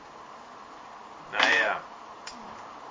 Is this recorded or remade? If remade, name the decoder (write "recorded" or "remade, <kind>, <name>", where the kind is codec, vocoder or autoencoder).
remade, vocoder, BigVGAN v2